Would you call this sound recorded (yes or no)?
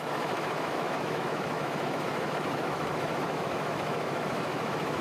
no